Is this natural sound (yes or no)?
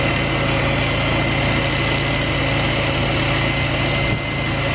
yes